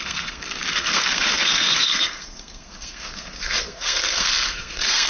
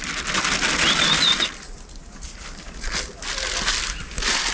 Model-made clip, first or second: first